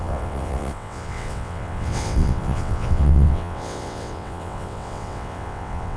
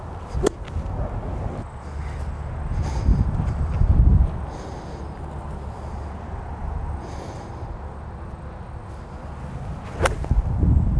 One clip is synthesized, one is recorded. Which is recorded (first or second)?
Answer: second